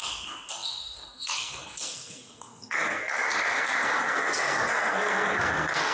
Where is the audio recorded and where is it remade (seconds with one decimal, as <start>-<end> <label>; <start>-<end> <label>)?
0.0-5.9 remade

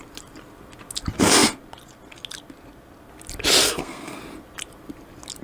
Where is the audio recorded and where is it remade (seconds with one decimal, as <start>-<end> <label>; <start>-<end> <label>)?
0.0-3.6 recorded; 3.6-4.2 remade; 4.2-5.4 recorded